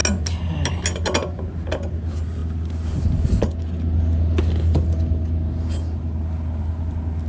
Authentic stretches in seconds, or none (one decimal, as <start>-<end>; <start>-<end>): 0.0-7.3